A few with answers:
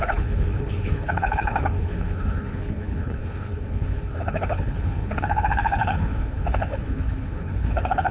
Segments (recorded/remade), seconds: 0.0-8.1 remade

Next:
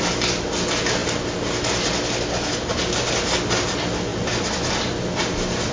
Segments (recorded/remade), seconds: 0.0-5.7 recorded

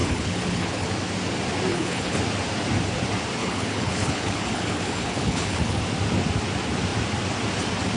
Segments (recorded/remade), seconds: 0.0-0.9 remade; 0.9-1.7 recorded; 1.7-2.2 remade; 2.2-3.4 recorded; 3.4-5.8 remade; 5.8-8.0 recorded

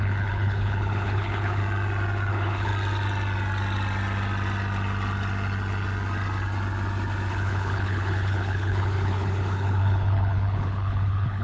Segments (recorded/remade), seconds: 0.0-1.6 remade; 1.6-2.3 recorded; 2.3-2.7 remade; 2.7-7.3 recorded; 7.3-11.4 remade

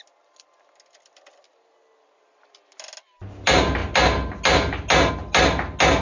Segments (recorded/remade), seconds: 0.0-6.0 recorded

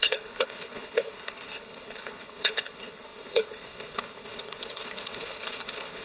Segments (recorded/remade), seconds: 0.0-6.0 remade

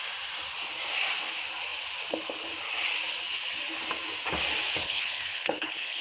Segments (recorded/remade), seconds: 0.0-4.8 recorded; 4.8-6.0 remade

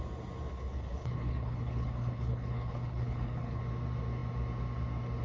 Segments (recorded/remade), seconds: 0.0-0.5 recorded; 0.5-3.6 remade; 3.6-5.2 recorded